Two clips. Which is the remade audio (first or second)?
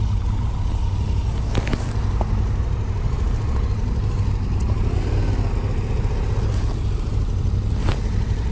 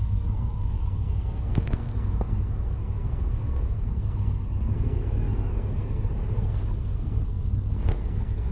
second